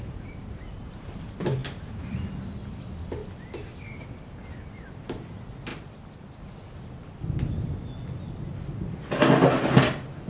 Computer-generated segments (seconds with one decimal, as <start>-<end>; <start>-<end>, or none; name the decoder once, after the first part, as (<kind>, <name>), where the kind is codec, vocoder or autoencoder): none